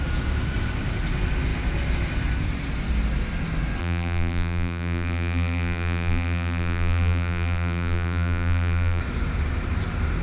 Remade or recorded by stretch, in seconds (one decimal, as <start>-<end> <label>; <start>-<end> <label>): 0.0-3.8 recorded; 3.8-9.0 remade; 9.0-10.2 recorded